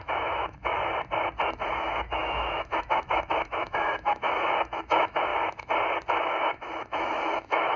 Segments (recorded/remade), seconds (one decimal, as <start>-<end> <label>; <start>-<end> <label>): 0.0-0.8 remade; 0.8-1.7 recorded; 1.7-5.3 remade; 5.3-6.2 recorded; 6.2-7.8 remade